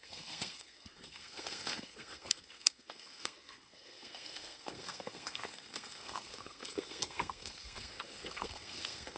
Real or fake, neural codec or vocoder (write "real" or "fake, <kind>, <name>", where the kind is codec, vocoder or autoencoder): fake, codec, SNAC